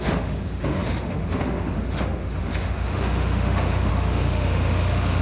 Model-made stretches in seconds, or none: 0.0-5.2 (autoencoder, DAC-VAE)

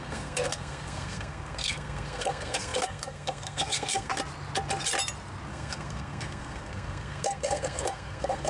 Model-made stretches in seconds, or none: 0.0-4.1 (codec, SNAC); 5.5-8.5

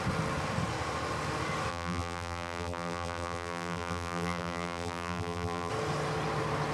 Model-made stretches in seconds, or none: 1.7-5.7 (vocoder, BigVGAN v2)

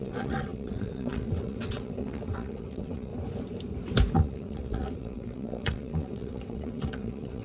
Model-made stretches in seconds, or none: 0.0-3.1 (vocoder, WaveNeXt); 4.1-7.4

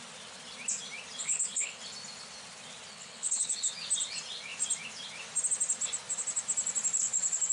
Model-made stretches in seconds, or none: 1.2-1.8 (codec, HILCodec); 2.9-3.7

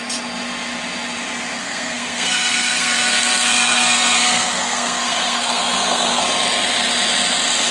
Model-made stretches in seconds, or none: 1.6-6.2 (codec, SNAC)